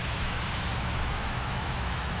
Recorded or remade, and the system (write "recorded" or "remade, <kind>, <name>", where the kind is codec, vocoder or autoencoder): remade, autoencoder, DAC-VAE